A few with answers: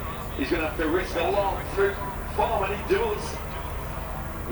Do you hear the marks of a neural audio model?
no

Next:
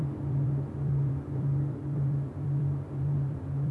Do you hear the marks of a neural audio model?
yes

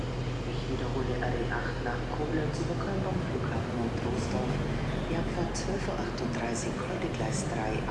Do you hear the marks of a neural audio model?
no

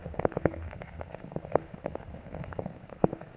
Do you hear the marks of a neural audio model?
yes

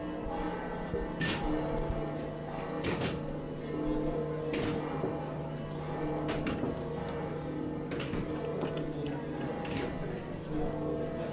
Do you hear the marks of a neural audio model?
no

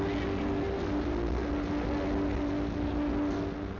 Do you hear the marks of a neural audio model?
no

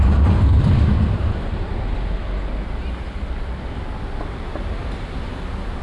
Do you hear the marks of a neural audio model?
no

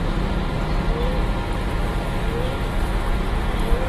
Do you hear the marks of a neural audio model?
no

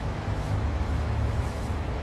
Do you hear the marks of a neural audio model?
yes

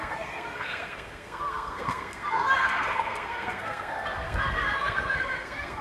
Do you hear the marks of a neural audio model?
yes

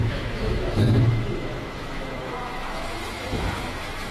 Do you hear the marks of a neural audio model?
yes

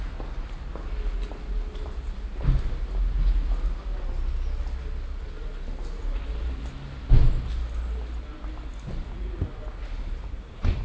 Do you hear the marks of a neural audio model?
no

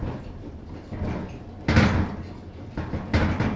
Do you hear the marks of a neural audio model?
no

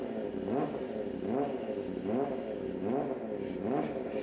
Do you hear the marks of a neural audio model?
no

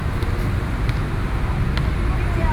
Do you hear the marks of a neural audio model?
no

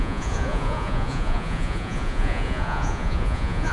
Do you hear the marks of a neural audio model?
yes